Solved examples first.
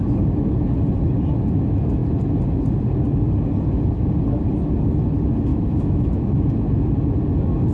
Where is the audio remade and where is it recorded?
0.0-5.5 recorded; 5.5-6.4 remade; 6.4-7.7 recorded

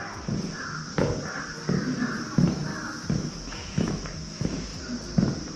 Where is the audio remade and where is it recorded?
0.0-2.3 recorded; 2.3-2.7 remade; 2.7-3.3 recorded; 3.3-4.7 remade; 4.7-5.6 recorded

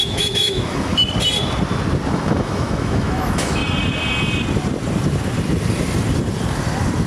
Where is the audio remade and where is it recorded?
0.0-0.9 remade; 0.9-2.1 recorded; 2.1-3.6 remade; 3.6-7.1 recorded

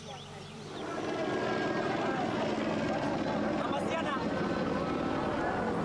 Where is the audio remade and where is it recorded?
0.0-5.8 recorded